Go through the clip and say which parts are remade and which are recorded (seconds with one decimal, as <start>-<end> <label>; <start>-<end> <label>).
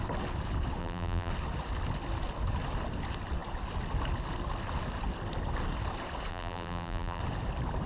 0.0-0.8 recorded; 0.8-1.3 remade; 1.3-6.3 recorded; 6.3-7.2 remade; 7.2-7.9 recorded